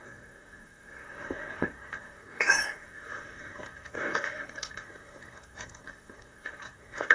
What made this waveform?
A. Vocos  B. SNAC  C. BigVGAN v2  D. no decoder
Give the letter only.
B